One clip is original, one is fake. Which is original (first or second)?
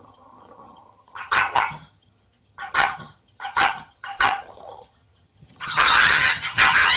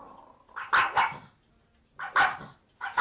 second